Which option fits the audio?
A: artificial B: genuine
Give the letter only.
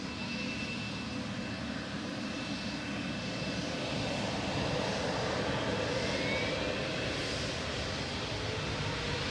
B